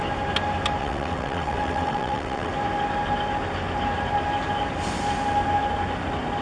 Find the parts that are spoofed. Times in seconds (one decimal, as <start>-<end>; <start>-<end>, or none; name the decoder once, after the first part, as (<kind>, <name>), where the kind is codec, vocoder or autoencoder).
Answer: 0.8-2.5 (vocoder, WaveNeXt)